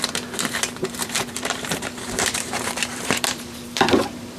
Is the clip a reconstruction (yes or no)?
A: yes